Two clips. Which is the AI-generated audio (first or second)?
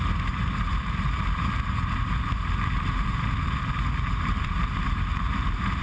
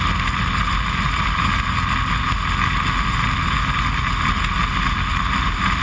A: first